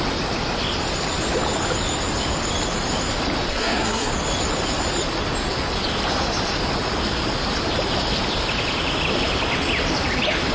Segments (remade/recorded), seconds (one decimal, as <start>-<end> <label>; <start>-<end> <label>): 0.0-3.5 recorded; 3.5-4.1 remade; 4.1-10.5 recorded